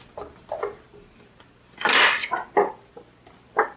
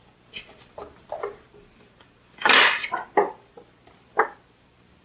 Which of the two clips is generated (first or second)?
second